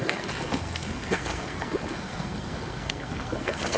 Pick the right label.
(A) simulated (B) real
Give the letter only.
A